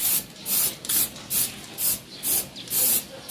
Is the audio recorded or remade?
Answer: recorded